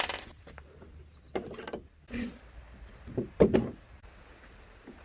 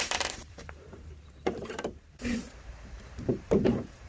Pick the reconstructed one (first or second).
second